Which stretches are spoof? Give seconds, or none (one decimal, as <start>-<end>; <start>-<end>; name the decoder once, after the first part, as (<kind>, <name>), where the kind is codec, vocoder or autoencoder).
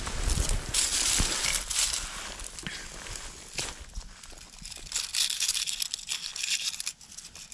none